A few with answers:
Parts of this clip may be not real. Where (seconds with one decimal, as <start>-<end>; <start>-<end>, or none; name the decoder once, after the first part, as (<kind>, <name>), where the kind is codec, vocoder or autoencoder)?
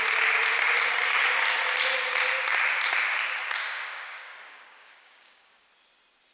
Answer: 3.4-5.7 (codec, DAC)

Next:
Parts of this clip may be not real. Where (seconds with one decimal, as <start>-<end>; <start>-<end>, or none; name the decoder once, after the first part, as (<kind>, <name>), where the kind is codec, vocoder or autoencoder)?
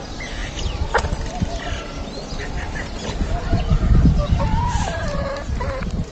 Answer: none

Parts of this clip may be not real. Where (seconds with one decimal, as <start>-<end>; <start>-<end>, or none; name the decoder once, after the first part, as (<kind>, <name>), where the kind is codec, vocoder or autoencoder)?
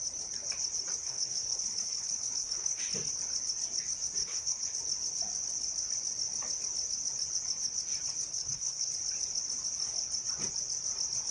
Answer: 1.0-2.8 (codec, HILCodec); 4.2-4.8; 8.3-8.9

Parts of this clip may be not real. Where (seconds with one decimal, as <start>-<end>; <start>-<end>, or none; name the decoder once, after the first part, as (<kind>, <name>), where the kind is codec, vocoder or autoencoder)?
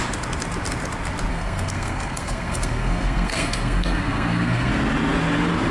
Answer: 1.3-4.7 (codec, SNAC)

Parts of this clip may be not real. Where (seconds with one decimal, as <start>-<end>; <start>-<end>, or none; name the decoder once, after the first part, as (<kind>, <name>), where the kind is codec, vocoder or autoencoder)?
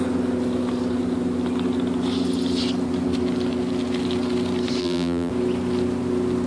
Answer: 4.8-5.3 (vocoder, BigVGAN v2)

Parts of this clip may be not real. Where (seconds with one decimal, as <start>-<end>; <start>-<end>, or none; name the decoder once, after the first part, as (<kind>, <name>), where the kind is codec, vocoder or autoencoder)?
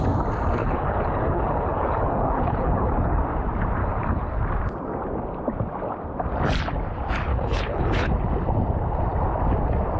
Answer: 0.6-3.2 (codec, HILCodec); 3.8-4.3; 7.3-8.1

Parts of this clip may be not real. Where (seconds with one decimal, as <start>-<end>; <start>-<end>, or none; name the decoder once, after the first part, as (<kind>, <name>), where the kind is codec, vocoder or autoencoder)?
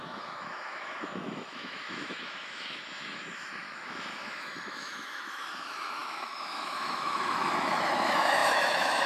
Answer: 0.0-9.1 (autoencoder, DAC-VAE)